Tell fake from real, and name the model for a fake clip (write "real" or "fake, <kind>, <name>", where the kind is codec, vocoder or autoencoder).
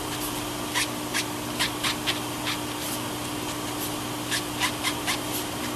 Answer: real